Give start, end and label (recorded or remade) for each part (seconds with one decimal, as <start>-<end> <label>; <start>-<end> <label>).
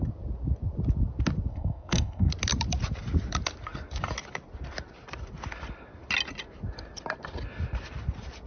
0.0-1.5 recorded; 1.5-2.3 remade; 2.3-8.5 recorded